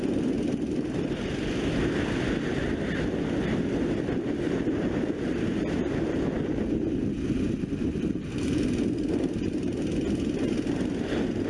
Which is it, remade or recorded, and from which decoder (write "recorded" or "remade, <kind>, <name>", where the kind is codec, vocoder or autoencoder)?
recorded